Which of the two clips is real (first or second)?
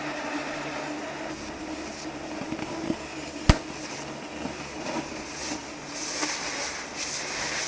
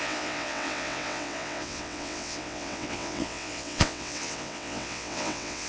first